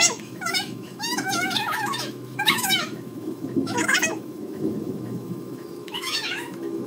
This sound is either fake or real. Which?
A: fake